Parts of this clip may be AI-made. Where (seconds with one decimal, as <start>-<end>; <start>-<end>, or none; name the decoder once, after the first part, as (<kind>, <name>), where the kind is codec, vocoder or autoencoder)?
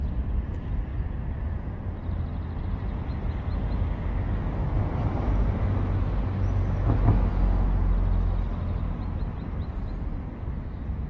none